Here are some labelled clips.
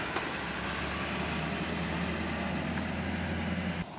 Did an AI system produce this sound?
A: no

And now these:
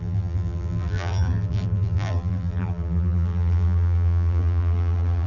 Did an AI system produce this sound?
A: yes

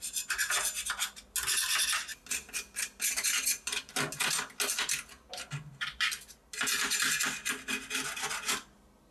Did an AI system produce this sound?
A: no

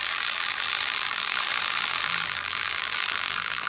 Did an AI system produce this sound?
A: yes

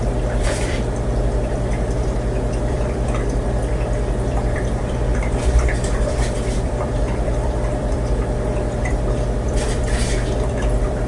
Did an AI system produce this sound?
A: yes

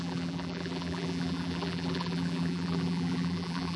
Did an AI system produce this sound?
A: yes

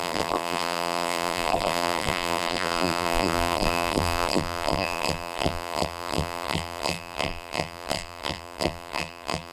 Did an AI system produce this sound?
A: yes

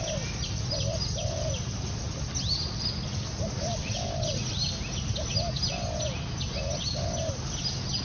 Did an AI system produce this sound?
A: no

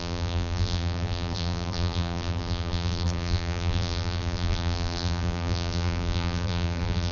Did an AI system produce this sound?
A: yes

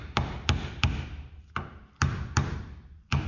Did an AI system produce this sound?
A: yes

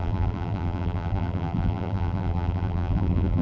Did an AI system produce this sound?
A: yes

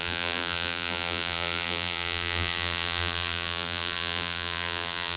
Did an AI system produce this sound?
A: yes